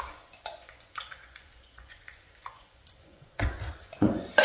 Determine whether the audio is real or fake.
fake